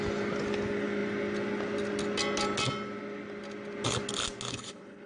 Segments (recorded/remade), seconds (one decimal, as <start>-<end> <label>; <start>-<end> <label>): 0.0-4.5 recorded; 4.5-5.1 remade